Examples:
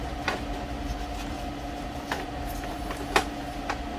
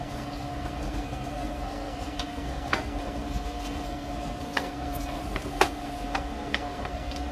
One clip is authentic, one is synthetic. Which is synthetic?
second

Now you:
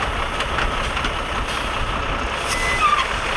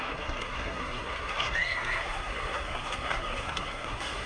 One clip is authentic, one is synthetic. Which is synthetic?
second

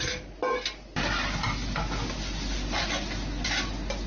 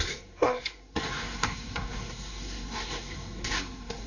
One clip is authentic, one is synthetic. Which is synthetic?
second